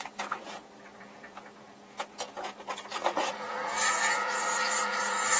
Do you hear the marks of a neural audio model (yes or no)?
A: yes